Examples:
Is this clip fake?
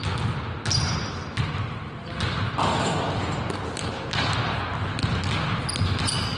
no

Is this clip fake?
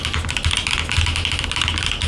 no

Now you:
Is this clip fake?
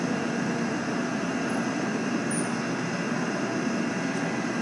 no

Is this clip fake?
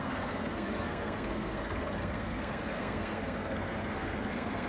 yes